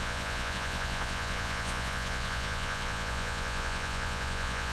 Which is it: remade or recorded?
remade